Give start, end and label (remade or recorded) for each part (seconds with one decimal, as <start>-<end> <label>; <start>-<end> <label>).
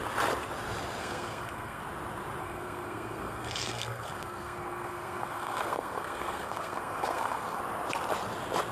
0.0-1.0 recorded; 1.0-1.8 remade; 1.8-2.4 recorded; 2.4-7.6 remade; 7.6-8.7 recorded